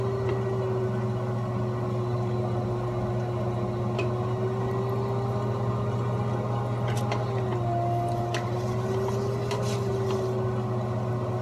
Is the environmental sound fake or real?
real